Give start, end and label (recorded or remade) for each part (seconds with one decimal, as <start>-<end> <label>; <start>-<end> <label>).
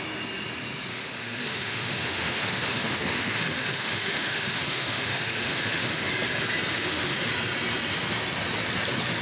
0.0-0.9 recorded; 0.9-6.1 remade; 6.1-6.7 recorded; 6.7-7.3 remade; 7.3-9.2 recorded